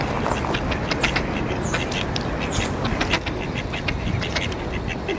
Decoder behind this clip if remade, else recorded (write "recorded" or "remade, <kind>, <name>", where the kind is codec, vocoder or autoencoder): recorded